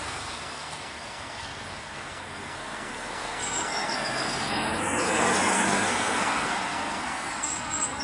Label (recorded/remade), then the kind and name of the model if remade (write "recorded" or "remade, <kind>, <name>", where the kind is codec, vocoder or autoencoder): remade, codec, SNAC